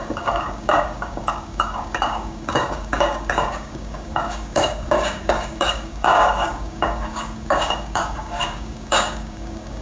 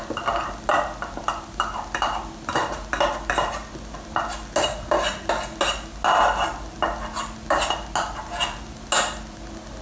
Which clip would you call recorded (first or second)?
second